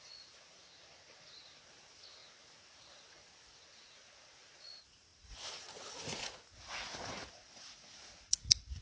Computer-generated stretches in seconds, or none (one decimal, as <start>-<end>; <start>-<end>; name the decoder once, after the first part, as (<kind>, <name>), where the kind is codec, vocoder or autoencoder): 0.0-0.7 (vocoder, Vocos); 1.6-8.8